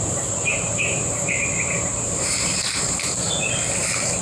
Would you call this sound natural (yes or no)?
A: no